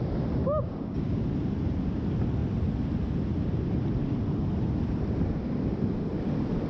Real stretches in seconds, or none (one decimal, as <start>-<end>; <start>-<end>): 0.0-0.4; 1.2-6.7